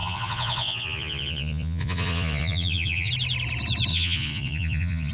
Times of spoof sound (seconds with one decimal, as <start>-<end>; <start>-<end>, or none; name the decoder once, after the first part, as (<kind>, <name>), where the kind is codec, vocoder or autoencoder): 0.0-3.1 (vocoder, Vocos); 3.9-5.1